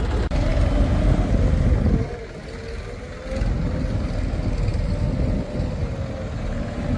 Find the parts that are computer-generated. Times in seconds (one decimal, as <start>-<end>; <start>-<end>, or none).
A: none